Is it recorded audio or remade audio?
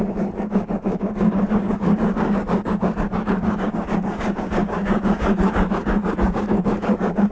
remade